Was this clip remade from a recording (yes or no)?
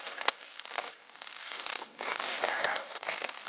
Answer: yes